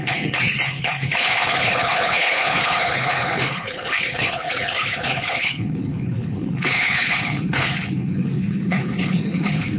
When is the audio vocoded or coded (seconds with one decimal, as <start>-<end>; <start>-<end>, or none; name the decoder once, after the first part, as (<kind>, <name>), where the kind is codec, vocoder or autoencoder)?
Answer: 0.0-9.8 (codec, HILCodec)